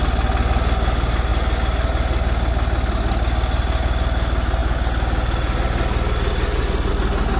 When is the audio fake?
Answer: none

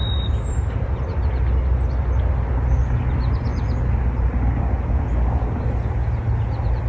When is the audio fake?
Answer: none

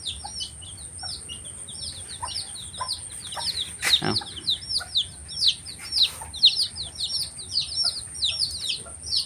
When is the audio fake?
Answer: none

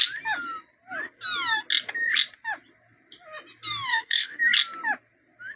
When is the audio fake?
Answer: 3.9-4.4 (codec, SNAC)

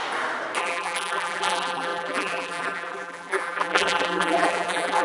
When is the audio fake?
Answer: 0.6-5.0 (vocoder, BigVGAN v2)

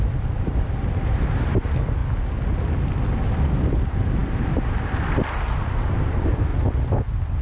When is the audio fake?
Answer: 0.0-2.0 (vocoder, BigVGAN v2); 3.5-6.5

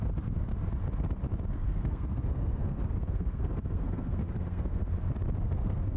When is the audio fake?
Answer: 0.0-0.5 (codec, SNAC); 1.5-4.8; 5.4-6.0

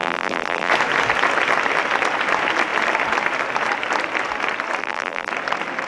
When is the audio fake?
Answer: 0.0-0.7 (vocoder, BigVGAN v2); 4.8-5.3